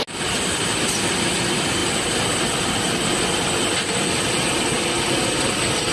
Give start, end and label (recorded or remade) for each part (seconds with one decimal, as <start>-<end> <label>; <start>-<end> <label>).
0.0-5.9 recorded